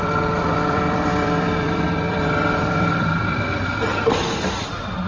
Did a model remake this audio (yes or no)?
yes